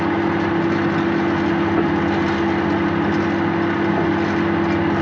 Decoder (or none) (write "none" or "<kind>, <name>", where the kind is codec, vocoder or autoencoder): none